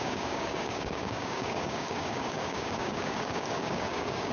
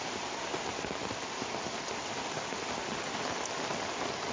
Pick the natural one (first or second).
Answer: second